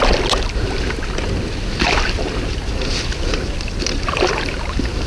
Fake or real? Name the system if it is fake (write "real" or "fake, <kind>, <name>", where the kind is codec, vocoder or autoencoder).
real